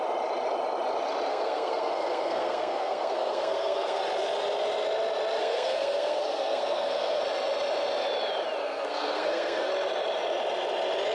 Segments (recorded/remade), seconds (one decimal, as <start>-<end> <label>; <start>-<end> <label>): 0.0-1.3 recorded; 1.3-4.0 remade; 4.0-5.4 recorded; 5.4-7.2 remade; 7.2-8.6 recorded; 8.6-9.7 remade; 9.7-11.1 recorded